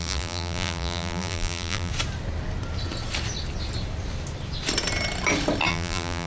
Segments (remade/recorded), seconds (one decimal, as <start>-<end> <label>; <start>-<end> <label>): 0.0-1.9 remade; 1.9-5.7 recorded; 5.7-6.3 remade